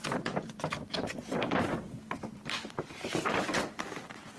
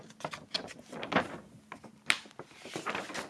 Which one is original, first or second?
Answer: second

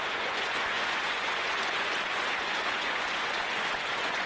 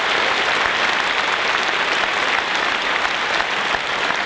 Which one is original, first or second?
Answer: second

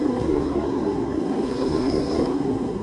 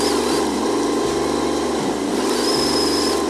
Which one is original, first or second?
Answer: second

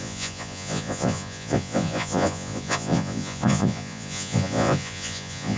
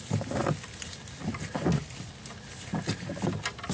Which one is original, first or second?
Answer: second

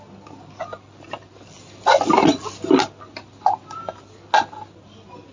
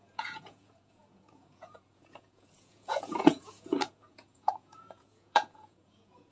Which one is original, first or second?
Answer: first